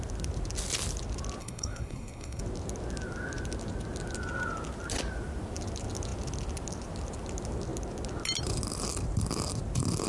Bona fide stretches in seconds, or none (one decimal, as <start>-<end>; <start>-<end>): 0.0-1.4; 2.4-10.1